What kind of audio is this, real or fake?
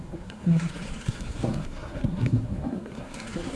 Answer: fake